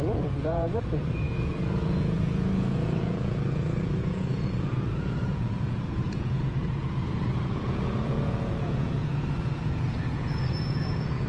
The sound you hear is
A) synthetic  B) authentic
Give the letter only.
A